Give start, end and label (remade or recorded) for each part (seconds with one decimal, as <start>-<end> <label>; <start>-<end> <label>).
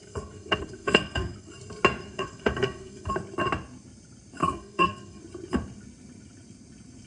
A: 0.0-1.5 remade; 1.5-2.0 recorded; 2.0-3.1 remade; 3.1-4.4 recorded; 4.4-5.2 remade; 5.2-7.1 recorded